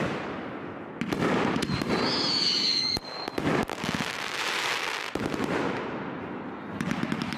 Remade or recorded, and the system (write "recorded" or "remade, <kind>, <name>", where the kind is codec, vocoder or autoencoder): recorded